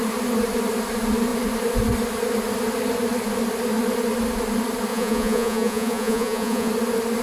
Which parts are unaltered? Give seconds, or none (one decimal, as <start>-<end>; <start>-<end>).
0.0-4.9; 6.7-7.2